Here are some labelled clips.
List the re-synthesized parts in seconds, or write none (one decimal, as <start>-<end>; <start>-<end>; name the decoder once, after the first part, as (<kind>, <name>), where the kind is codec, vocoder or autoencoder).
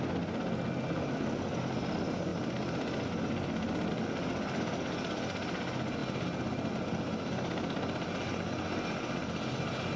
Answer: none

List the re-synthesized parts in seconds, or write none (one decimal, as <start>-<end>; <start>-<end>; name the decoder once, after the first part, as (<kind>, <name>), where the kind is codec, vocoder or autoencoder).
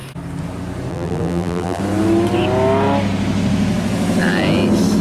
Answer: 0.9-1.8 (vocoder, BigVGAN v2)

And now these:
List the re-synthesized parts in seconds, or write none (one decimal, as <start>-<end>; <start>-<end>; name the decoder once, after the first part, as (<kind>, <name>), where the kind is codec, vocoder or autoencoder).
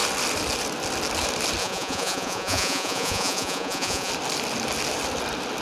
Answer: 1.6-4.1 (vocoder, Vocos)